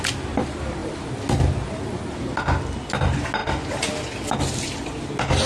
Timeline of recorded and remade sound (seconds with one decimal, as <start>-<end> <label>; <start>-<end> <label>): 0.0-5.5 recorded